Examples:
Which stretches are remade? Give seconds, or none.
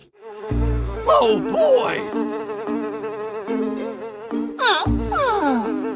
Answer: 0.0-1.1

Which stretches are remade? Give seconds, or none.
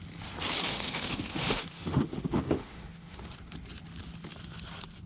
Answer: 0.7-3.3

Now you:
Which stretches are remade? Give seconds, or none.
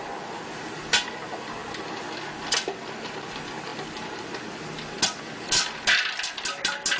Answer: none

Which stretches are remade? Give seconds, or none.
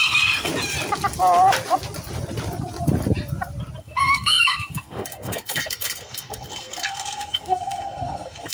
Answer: 0.0-0.5; 3.8-8.5